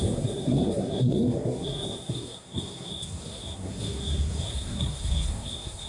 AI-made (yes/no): yes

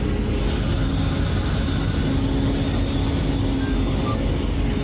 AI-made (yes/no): no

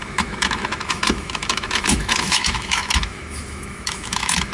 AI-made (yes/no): yes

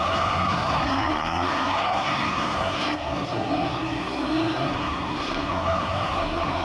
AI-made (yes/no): yes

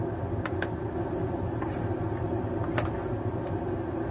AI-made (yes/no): no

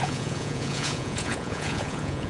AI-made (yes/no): yes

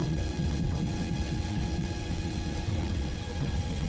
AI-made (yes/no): yes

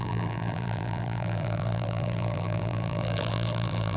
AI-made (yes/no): yes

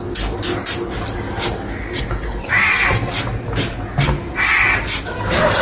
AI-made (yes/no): no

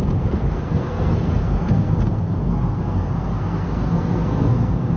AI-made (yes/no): yes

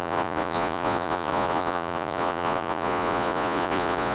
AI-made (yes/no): yes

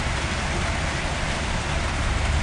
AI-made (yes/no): yes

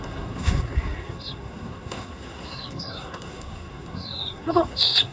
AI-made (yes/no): yes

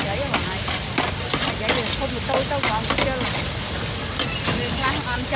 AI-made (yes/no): no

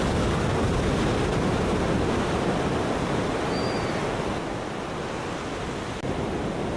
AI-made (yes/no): no